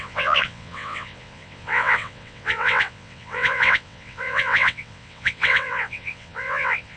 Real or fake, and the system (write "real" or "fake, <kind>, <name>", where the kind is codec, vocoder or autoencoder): fake, vocoder, WaveNeXt